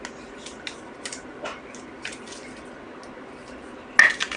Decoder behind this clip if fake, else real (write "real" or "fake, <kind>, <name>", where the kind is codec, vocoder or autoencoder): real